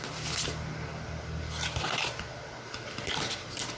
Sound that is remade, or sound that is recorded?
recorded